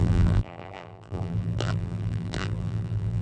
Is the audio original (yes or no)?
no